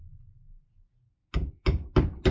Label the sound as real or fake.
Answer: real